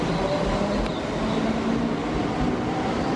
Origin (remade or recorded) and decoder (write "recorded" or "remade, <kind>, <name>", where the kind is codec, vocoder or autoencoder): recorded